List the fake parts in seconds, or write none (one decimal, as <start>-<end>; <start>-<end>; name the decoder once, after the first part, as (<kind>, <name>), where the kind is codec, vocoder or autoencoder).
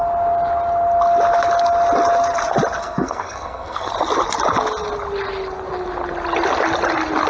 2.8-3.9 (codec, SNAC)